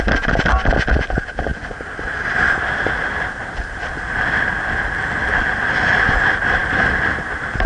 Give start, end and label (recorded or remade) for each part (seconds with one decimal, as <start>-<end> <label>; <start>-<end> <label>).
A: 0.0-7.7 recorded